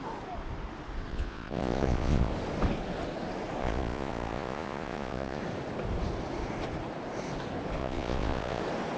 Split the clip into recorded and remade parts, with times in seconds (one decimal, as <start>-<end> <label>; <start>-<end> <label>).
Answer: 0.0-1.1 recorded; 1.1-2.3 remade; 2.3-3.6 recorded; 3.6-5.4 remade; 5.4-7.8 recorded; 7.8-8.6 remade; 8.6-9.0 recorded